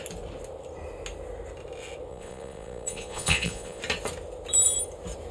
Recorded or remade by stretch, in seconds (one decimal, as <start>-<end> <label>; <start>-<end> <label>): 0.0-2.1 recorded; 2.1-3.8 remade; 3.8-5.3 recorded